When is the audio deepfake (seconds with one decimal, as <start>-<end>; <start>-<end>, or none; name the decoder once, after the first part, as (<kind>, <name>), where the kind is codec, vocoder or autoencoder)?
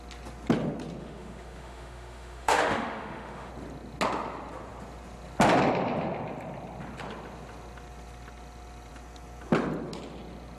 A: 1.0-3.5 (autoencoder, DAC-VAE)